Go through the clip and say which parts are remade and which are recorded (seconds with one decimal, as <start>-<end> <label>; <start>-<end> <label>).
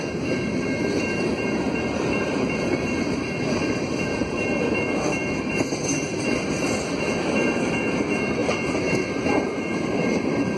0.0-10.6 remade